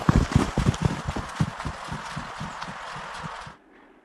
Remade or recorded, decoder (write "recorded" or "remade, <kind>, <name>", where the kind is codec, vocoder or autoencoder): recorded